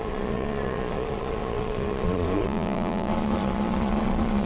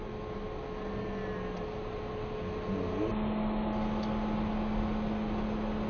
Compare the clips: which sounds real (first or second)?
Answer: second